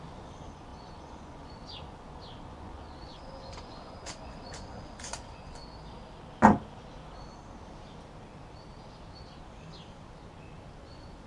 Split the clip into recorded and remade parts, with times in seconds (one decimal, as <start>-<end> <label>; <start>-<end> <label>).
0.0-5.6 remade; 5.6-10.8 recorded; 10.8-11.3 remade